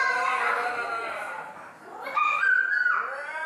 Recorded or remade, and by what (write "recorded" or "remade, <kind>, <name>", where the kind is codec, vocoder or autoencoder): recorded